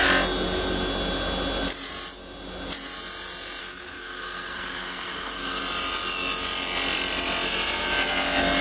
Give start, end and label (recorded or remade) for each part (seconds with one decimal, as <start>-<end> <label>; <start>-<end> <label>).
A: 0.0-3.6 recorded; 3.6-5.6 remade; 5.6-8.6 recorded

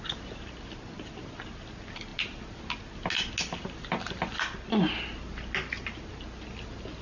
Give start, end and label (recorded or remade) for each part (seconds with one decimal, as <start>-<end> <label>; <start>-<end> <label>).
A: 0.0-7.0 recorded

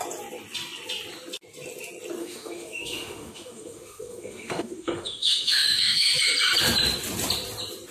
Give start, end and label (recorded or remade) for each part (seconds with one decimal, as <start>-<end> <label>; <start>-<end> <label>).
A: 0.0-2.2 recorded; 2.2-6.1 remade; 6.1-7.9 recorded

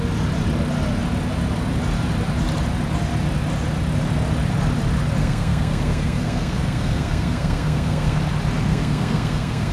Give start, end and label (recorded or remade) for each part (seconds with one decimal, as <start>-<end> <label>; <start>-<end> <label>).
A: 0.0-5.2 recorded; 5.2-8.2 remade; 8.2-8.7 recorded; 8.7-9.7 remade

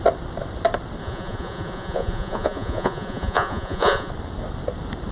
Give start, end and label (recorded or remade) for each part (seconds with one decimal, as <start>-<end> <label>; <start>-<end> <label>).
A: 0.0-1.0 recorded; 1.0-4.1 remade; 4.1-5.1 recorded

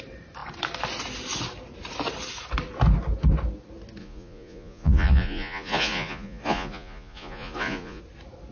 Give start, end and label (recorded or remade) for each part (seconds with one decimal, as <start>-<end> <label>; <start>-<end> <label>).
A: 0.0-4.0 recorded; 4.0-8.0 remade; 8.0-8.5 recorded